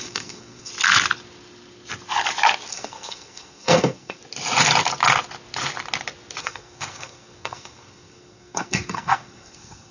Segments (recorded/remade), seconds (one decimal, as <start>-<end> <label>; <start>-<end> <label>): 0.0-0.7 remade; 0.7-2.7 recorded; 2.7-4.2 remade; 4.2-6.4 recorded; 6.4-9.9 remade